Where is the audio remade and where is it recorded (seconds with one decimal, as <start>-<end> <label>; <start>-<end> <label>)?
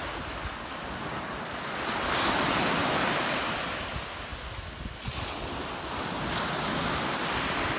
0.0-7.8 recorded